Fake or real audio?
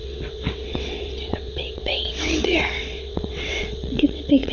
fake